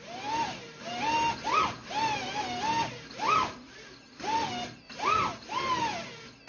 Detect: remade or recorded recorded